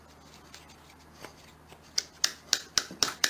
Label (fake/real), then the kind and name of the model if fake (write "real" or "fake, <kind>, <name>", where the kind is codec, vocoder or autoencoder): real